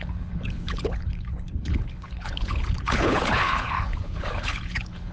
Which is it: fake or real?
fake